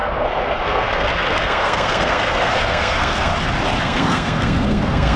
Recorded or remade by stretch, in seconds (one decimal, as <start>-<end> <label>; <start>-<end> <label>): 0.0-3.3 remade; 3.3-3.8 recorded; 3.8-5.2 remade